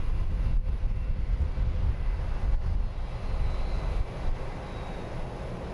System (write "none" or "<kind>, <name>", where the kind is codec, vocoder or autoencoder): none